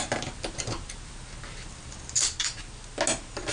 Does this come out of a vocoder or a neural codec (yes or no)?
no